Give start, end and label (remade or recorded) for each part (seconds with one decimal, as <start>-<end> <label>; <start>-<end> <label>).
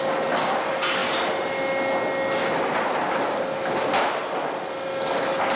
0.0-5.6 recorded